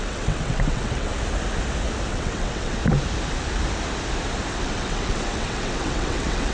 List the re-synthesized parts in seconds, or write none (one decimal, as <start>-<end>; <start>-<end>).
0.0-1.1; 2.1-2.8; 4.5-6.5